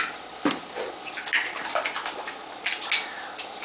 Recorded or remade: recorded